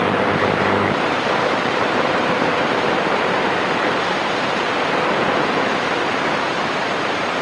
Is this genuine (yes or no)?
no